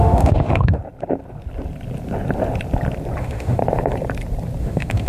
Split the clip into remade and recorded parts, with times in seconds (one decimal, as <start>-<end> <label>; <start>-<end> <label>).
0.0-0.8 remade; 0.8-3.2 recorded; 3.2-3.6 remade; 3.6-4.6 recorded; 4.6-5.1 remade